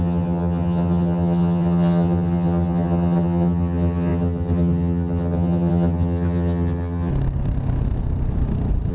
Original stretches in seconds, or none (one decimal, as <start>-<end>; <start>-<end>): 7.1-8.9